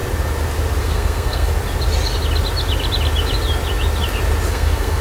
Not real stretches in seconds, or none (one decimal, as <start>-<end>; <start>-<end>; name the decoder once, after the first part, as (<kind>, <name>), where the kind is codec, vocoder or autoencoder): 0.8-1.5 (codec, SNAC); 4.5-5.0